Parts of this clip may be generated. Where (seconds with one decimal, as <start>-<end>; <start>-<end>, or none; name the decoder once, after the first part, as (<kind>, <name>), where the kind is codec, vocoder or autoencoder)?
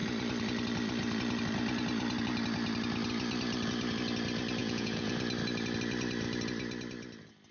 4.6-5.1 (vocoder, Vocos)